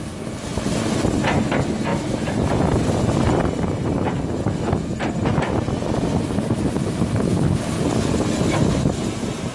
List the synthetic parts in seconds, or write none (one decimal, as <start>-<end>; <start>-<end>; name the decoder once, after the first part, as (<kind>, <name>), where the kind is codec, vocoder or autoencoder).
1.9-6.3 (vocoder, BigVGAN v2)